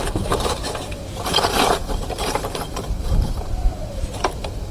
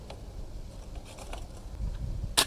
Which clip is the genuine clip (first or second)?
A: second